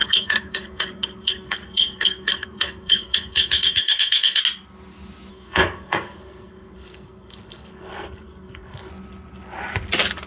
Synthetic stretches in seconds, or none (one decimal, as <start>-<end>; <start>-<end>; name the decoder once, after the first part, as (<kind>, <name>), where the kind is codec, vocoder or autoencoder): 0.0-4.4 (codec, SNAC); 5.3-8.9